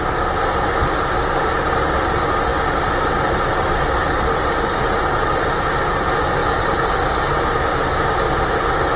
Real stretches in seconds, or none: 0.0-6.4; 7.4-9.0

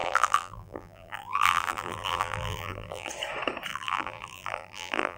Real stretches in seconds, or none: 3.1-3.7

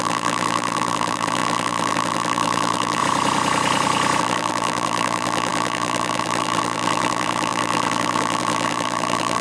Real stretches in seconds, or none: 3.0-4.2

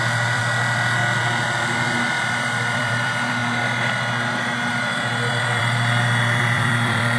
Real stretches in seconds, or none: 0.4-2.4; 3.4-4.7

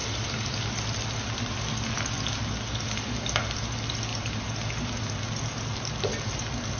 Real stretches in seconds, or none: 2.5-6.8